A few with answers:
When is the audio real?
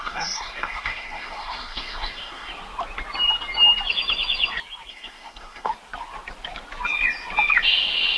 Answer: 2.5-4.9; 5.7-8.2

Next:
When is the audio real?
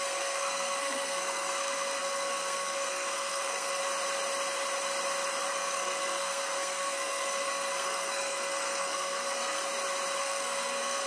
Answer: 3.8-5.5; 9.6-10.2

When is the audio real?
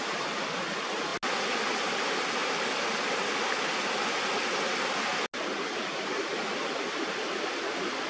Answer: 0.0-8.1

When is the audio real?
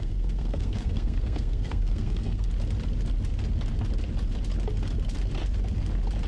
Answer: 2.5-6.3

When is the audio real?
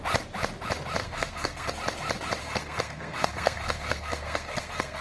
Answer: 0.0-1.0; 1.7-2.4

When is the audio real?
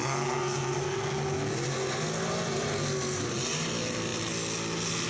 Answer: 1.0-5.1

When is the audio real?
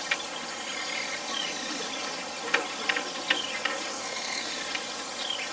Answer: 0.0-3.9; 4.5-5.5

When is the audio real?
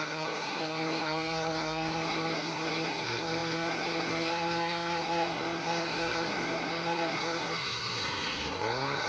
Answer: none